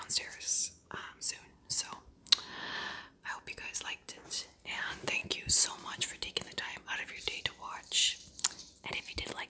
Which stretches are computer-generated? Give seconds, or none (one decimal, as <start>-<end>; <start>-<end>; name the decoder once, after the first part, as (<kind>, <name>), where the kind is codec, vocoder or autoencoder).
0.6-1.2 (codec, DAC)